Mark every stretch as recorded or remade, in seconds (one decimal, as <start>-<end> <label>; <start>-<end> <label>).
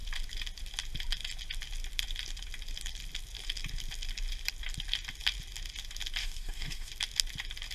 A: 0.0-6.2 recorded; 6.2-6.9 remade; 6.9-7.7 recorded